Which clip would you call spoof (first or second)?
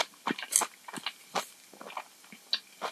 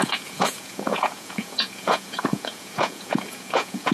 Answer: second